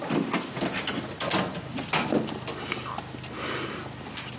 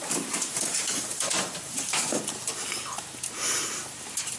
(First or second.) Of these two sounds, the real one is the first